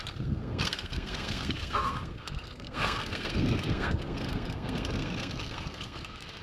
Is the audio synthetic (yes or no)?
yes